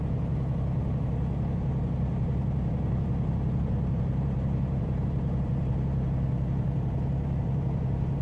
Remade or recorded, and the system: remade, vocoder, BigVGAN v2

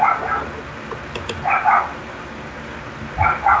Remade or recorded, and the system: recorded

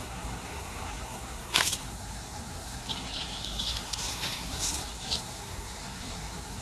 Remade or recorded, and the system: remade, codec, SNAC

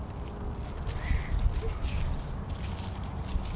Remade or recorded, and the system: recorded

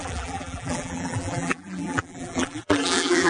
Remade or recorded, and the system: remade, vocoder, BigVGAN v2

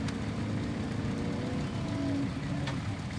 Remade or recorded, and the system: recorded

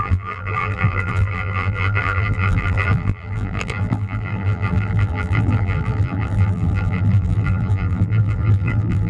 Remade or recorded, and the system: remade, vocoder, BigVGAN v2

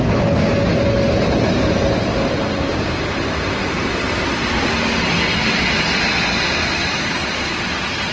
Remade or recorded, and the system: recorded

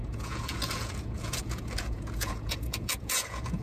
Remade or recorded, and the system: remade, vocoder, Vocos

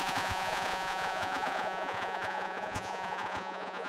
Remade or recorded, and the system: remade, vocoder, Vocos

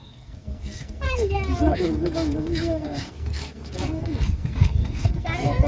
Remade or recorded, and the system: remade, codec, SNAC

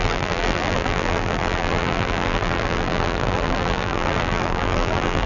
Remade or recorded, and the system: remade, vocoder, BigVGAN v2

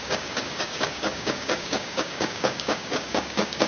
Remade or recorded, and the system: remade, codec, DAC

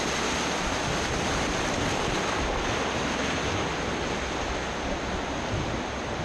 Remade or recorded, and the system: recorded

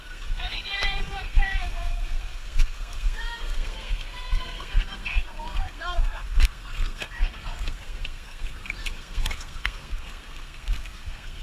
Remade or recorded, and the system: remade, codec, SNAC